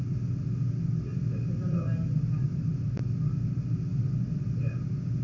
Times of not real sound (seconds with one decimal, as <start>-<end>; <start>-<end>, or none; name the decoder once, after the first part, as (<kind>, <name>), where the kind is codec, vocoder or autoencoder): 1.1-2.9 (vocoder, BigVGAN v2); 3.9-4.8